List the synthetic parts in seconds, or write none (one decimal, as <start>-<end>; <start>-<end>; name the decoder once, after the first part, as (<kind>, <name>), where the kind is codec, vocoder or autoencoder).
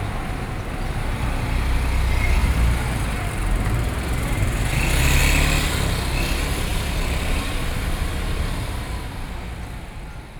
2.4-5.2 (vocoder, BigVGAN v2); 6.7-9.0